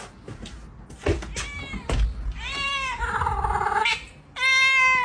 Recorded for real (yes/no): yes